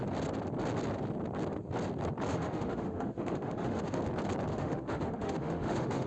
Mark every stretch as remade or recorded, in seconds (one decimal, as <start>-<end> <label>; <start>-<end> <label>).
0.0-2.3 recorded; 2.3-4.0 remade; 4.0-4.5 recorded; 4.5-6.1 remade